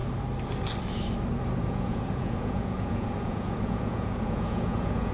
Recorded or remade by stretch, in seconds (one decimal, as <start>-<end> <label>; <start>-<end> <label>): 0.0-1.6 recorded; 1.6-5.1 remade